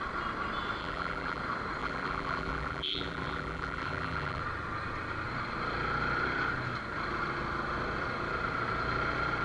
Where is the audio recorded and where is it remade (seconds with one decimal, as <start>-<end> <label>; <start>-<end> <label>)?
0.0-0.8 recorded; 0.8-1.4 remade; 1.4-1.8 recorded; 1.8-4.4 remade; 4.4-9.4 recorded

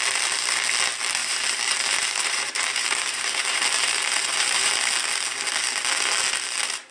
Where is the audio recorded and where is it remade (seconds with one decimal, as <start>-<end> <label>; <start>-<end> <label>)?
0.0-1.2 recorded; 1.2-4.7 remade; 4.7-6.9 recorded

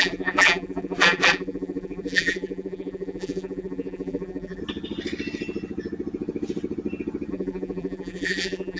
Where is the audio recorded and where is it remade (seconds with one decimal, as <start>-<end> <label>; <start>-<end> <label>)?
0.0-4.6 remade; 4.6-7.3 recorded; 7.3-8.8 remade